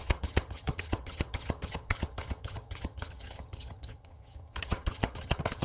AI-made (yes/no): yes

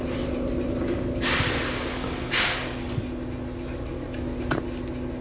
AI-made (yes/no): no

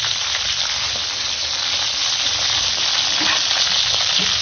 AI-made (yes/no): no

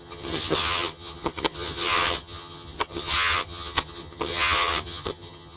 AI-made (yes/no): yes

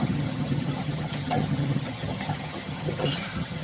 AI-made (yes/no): yes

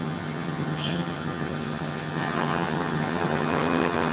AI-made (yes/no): yes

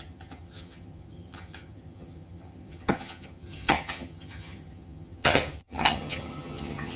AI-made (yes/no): yes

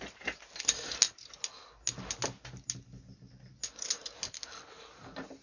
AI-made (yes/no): no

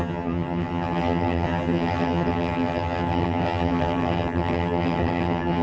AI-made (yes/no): yes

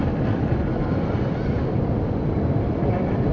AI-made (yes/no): no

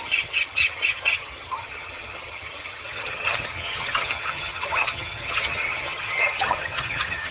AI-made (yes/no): yes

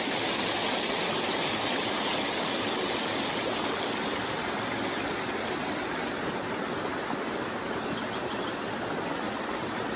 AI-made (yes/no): no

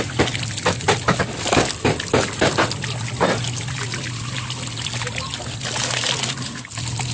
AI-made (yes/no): no